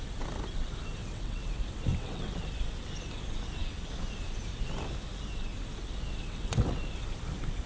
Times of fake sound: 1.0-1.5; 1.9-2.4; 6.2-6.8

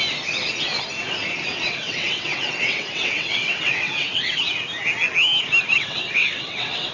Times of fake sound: 1.5-4.4; 5.7-6.9

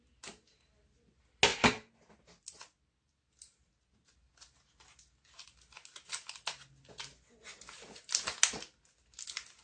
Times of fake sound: none

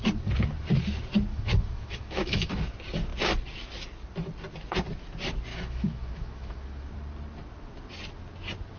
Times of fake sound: 1.3-2.5; 5.5-6.9

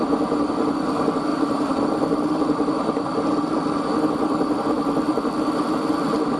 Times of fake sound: 1.3-1.8

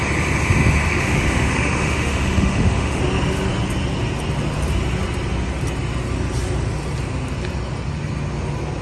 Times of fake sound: 0.9-3.0

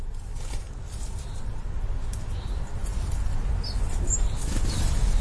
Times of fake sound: none

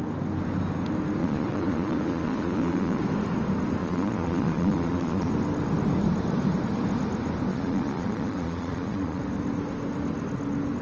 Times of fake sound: 1.2-3.0; 3.8-5.3; 7.5-9.2